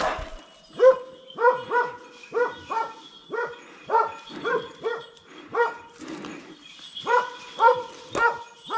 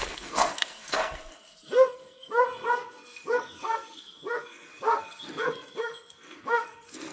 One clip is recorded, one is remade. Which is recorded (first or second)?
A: first